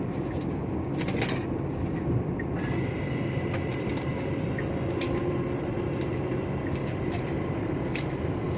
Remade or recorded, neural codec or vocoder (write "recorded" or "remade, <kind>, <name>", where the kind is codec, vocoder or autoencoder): remade, vocoder, BigVGAN v2